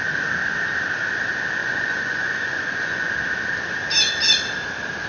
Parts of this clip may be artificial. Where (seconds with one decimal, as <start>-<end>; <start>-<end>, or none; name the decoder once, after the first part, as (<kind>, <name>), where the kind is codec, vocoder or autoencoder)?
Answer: 1.6-3.1 (vocoder, Vocos)